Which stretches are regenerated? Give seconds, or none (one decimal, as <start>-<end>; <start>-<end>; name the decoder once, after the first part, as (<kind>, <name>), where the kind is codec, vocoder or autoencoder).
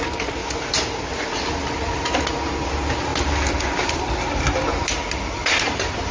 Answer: none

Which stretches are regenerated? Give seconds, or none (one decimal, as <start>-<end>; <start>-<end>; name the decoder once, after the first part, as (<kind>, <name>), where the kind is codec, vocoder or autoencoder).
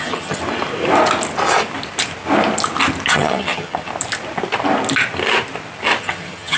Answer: 0.0-0.4 (vocoder, HiFi-GAN); 3.1-3.9; 6.0-6.6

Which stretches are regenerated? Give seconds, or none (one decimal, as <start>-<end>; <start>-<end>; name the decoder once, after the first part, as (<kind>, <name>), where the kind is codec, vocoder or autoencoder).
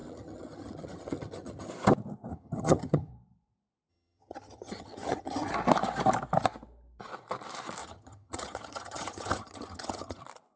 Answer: 0.0-1.7 (vocoder, HiFi-GAN); 2.3-3.1; 3.9-5.5; 7.8-10.2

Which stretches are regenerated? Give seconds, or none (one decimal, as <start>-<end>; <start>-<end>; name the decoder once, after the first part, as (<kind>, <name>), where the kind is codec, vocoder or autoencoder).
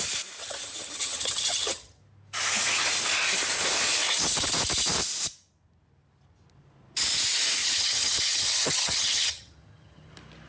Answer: 0.4-2.0 (vocoder, HiFi-GAN); 7.6-10.1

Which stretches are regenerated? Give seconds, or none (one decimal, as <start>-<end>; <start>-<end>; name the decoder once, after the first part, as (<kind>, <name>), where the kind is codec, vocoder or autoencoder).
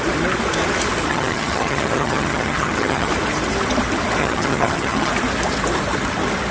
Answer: 1.1-3.1 (vocoder, HiFi-GAN); 4.2-5.1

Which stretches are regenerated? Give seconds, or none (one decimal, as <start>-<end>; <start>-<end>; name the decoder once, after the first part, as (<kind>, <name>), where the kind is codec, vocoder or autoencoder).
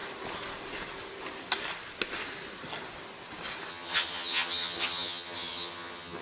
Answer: 3.7-6.2 (vocoder, HiFi-GAN)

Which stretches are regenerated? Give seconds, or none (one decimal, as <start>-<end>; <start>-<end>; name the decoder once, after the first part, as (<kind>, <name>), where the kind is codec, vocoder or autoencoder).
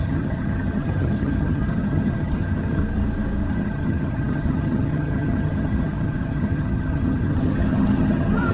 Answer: 0.0-2.8 (vocoder, HiFi-GAN); 3.5-8.5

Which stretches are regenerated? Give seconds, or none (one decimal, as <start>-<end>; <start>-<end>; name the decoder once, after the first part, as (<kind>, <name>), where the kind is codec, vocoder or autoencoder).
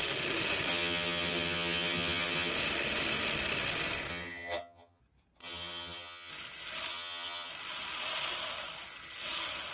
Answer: 0.7-2.5 (vocoder, HiFi-GAN); 4.1-5.0; 5.4-6.3; 6.9-7.5